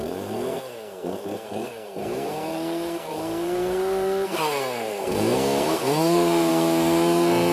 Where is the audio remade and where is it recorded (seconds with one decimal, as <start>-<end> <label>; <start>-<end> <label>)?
0.0-7.5 remade

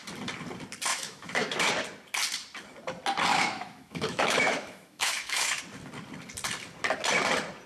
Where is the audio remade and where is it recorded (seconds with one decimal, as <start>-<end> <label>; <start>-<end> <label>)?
0.0-0.9 recorded; 0.9-1.7 remade; 1.7-3.3 recorded; 3.3-5.6 remade; 5.6-7.7 recorded

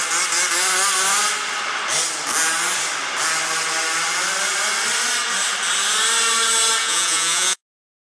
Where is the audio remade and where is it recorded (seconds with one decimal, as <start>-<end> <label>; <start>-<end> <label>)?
0.0-6.8 recorded; 6.8-7.6 remade; 7.6-8.0 recorded

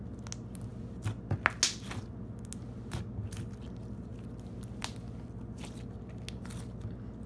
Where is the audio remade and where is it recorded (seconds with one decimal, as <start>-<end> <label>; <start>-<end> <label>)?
0.0-7.3 recorded

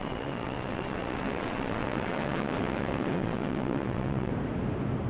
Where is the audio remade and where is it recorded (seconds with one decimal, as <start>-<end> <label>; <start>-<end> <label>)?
0.0-4.3 remade; 4.3-5.1 recorded